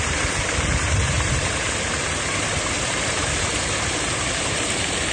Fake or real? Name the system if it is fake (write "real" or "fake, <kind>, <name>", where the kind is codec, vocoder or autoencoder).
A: fake, vocoder, BigVGAN v2